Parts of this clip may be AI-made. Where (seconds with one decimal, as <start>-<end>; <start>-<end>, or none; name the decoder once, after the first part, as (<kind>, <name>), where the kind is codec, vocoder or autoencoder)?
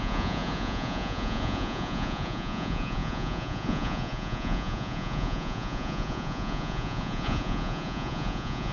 0.0-8.7 (vocoder, Vocos)